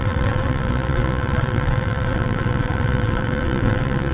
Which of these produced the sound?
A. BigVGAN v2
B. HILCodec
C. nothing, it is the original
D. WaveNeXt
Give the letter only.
D